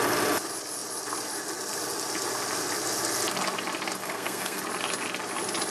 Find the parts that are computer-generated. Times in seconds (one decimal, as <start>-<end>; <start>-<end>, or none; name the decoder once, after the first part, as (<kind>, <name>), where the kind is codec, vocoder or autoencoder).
4.0-4.6 (codec, SNAC)